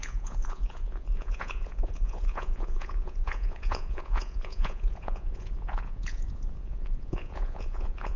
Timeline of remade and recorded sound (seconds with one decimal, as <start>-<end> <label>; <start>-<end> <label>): 0.0-8.2 remade